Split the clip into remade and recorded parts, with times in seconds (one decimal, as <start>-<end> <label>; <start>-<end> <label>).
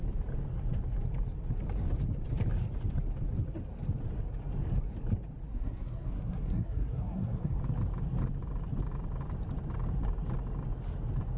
0.0-5.5 recorded; 5.5-7.6 remade; 7.6-11.4 recorded